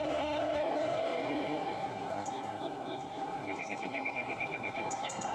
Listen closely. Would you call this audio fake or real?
fake